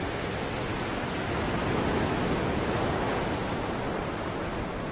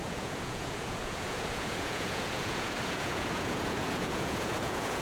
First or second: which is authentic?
first